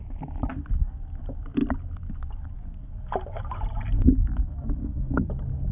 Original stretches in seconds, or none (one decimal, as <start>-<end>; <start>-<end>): 0.0-4.8; 5.3-5.7